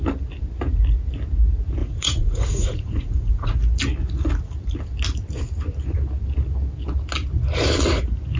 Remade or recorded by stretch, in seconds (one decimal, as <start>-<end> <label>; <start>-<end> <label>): 0.0-1.8 recorded; 1.8-3.6 remade; 3.6-8.4 recorded